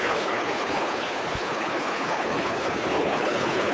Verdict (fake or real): fake